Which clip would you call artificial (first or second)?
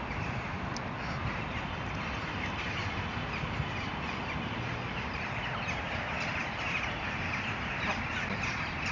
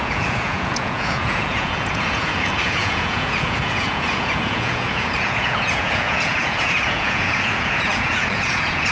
second